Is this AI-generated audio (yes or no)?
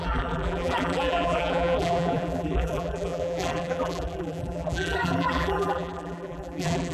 yes